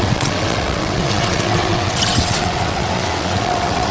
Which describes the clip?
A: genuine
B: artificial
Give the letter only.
B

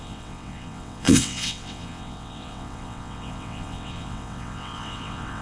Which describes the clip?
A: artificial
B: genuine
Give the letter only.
A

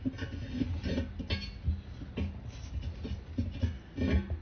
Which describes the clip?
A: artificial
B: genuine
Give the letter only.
B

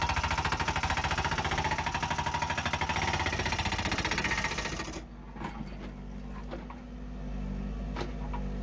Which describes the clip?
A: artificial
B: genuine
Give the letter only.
B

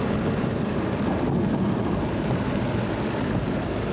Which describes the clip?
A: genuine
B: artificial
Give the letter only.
A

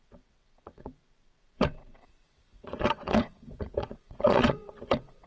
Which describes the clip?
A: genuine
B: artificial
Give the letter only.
B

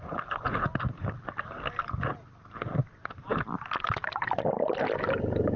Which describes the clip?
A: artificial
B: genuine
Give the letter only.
B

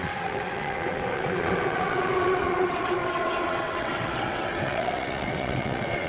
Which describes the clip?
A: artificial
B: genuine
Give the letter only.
A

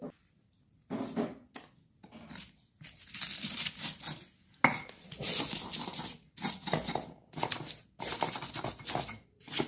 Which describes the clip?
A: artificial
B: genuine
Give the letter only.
B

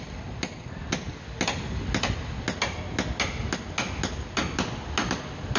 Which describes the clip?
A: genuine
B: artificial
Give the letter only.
A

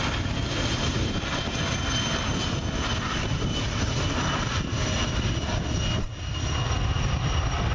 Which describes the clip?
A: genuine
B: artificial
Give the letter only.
A